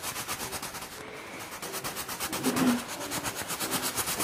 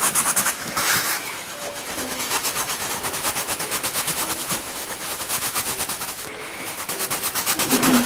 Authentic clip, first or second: first